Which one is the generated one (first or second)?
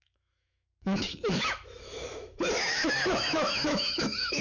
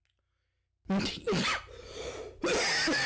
first